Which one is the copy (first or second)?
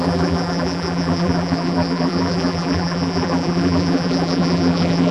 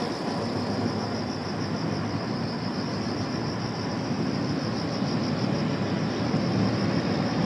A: first